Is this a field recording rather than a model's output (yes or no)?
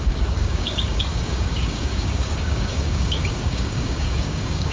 no